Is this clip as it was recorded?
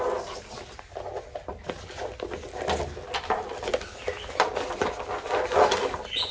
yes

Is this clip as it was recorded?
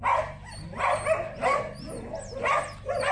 yes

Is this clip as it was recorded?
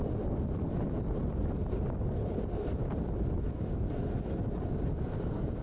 yes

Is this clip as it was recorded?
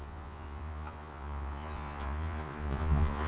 no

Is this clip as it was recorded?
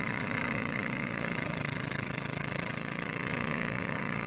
no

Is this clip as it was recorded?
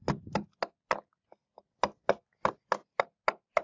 yes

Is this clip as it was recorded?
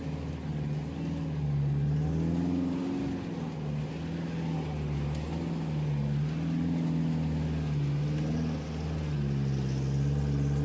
yes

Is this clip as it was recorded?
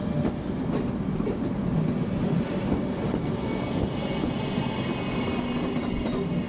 yes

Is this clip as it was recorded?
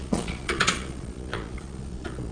no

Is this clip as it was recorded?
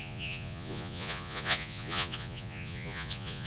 no